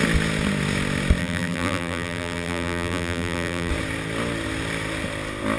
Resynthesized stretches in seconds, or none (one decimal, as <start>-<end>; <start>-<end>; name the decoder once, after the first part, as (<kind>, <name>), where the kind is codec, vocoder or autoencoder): 1.2-3.7 (vocoder, BigVGAN v2)